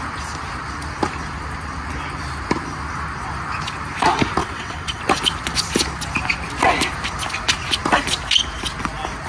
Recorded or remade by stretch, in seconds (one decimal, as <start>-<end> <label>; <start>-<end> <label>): 0.0-4.4 recorded; 4.4-5.0 remade; 5.0-9.3 recorded